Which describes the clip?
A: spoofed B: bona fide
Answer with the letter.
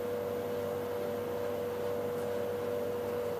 B